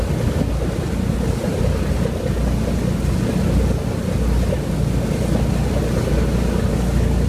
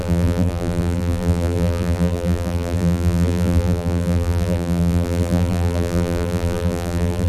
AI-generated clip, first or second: second